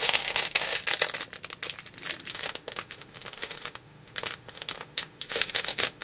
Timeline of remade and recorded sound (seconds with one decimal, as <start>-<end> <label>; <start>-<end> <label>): 0.0-0.8 remade; 0.8-2.3 recorded; 2.3-6.0 remade